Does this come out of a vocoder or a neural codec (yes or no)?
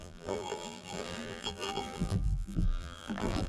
yes